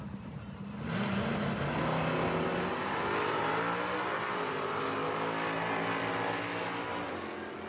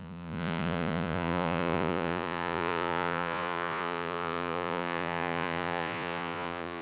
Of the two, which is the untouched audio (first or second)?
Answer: first